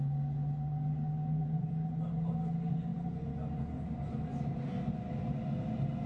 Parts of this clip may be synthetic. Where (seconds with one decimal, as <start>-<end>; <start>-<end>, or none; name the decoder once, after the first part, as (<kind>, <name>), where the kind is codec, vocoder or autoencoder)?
1.4-2.3 (vocoder, BigVGAN v2)